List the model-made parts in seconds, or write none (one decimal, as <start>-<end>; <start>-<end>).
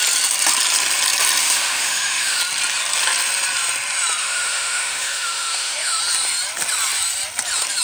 1.4-2.4; 4.2-6.0